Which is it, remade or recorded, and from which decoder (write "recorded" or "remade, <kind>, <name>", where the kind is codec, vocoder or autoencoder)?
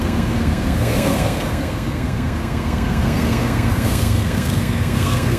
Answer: remade, codec, SNAC